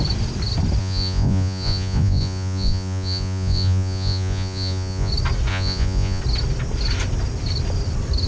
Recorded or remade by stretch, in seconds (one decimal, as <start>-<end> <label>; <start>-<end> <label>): 0.0-0.8 recorded; 0.8-5.1 remade; 5.1-5.5 recorded; 5.5-6.2 remade; 6.2-8.3 recorded